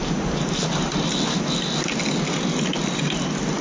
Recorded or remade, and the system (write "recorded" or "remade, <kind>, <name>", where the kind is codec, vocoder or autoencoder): recorded